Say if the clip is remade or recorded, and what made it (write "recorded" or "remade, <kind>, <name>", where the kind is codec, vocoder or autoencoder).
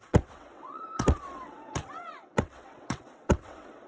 remade, vocoder, WaveNeXt